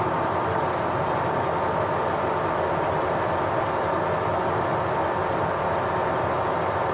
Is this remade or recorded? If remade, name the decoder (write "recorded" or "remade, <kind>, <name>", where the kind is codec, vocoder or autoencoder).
recorded